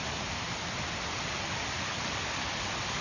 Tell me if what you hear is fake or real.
real